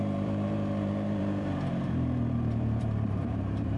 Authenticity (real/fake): fake